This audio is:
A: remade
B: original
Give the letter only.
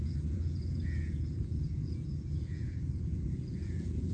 A